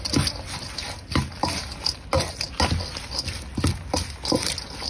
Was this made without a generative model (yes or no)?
yes